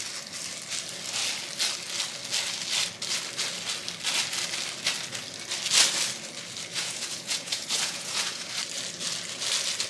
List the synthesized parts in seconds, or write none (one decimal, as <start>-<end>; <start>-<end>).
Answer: 6.7-8.6